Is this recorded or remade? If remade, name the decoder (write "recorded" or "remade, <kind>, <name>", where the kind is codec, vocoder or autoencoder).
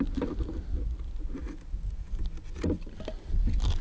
recorded